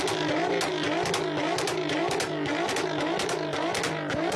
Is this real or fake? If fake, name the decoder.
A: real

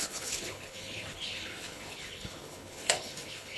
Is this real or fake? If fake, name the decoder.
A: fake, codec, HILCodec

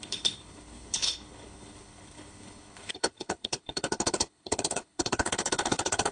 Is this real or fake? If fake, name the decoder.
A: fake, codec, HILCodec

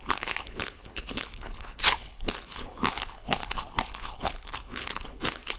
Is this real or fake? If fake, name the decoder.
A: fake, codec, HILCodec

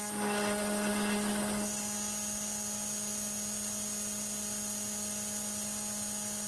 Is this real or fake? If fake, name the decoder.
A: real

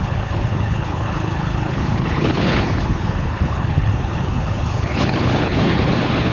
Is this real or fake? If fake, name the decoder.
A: fake, codec, HILCodec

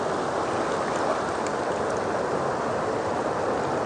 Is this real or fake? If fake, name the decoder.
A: real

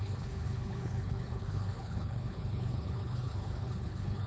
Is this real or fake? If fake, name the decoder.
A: fake, codec, HILCodec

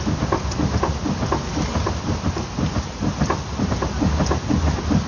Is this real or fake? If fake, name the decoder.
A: real